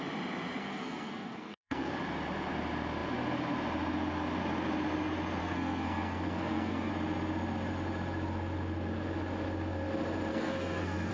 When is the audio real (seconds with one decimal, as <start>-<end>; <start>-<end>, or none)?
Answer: 0.0-0.6; 1.9-5.4; 6.9-10.3